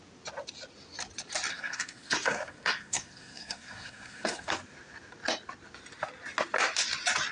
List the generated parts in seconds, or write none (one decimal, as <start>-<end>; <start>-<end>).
1.5-4.5

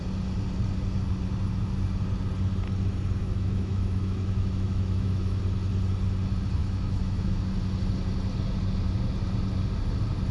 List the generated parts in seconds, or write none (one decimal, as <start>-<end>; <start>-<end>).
3.2-5.4; 6.6-7.4

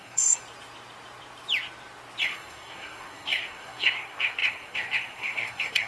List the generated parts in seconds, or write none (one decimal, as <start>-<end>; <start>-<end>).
0.0-0.4; 2.2-5.9

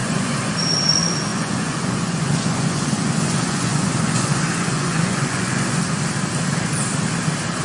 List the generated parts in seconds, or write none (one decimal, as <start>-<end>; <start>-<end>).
0.0-0.5; 1.3-5.8